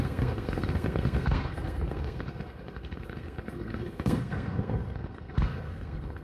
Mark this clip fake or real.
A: fake